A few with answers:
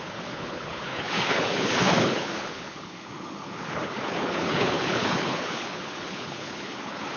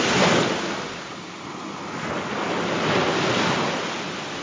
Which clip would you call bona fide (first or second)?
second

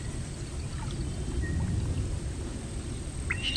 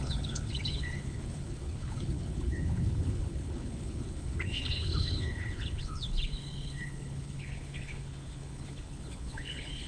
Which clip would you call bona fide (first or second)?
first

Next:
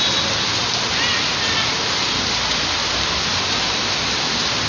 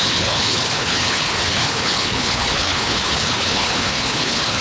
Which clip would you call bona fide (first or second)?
first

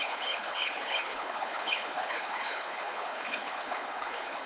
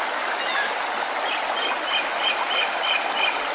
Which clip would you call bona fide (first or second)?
second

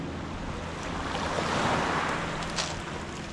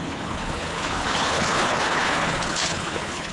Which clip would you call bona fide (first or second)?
first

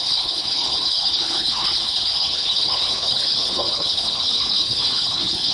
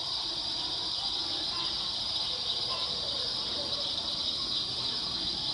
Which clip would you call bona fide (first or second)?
second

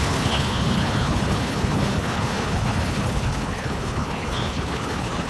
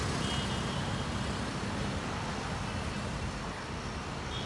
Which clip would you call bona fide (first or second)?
second